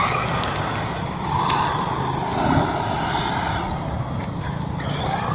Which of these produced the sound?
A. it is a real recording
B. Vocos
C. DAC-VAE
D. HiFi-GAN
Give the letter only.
A